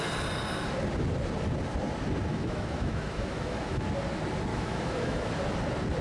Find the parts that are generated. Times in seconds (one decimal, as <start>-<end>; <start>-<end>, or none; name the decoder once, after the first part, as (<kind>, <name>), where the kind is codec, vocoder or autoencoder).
2.3-3.8 (autoencoder, DAC-VAE); 4.5-5.3